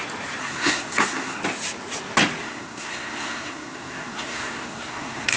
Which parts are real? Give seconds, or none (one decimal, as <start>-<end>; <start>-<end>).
0.0-0.4; 1.4-2.4